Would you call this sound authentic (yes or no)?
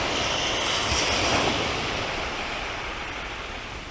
yes